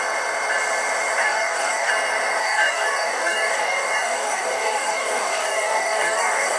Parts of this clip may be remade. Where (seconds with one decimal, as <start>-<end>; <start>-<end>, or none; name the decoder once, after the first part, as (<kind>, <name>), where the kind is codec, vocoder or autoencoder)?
1.2-1.9 (codec, DAC); 2.4-6.6

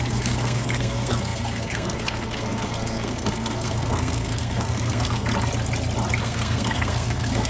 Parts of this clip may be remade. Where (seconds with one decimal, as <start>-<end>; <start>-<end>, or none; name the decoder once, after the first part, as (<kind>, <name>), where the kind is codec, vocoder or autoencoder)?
0.0-5.3 (codec, SNAC); 6.2-7.5

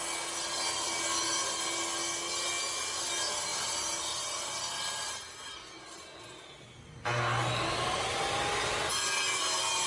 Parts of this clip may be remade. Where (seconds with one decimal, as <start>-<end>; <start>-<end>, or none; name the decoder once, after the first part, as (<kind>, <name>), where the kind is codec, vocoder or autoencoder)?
3.5-5.5 (vocoder, BigVGAN v2)

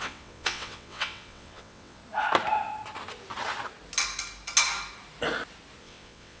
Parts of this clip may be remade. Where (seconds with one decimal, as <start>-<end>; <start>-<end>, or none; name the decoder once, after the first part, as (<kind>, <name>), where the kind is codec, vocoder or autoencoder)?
0.0-2.0 (vocoder, WaveNeXt); 5.8-6.4

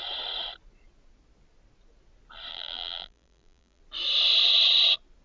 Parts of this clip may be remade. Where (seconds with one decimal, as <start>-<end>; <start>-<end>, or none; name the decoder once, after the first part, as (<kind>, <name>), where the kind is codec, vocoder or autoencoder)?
2.5-3.8 (vocoder, BigVGAN v2)

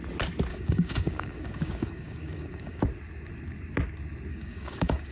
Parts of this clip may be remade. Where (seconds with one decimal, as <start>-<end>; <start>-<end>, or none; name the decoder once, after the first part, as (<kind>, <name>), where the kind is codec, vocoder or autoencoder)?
0.5-2.8 (codec, DAC); 4.3-5.1

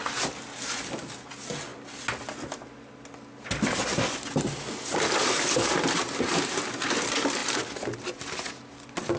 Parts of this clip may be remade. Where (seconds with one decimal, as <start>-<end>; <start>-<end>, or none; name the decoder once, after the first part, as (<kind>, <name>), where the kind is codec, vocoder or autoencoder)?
none